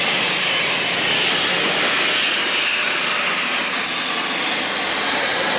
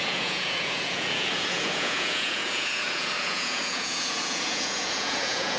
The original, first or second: first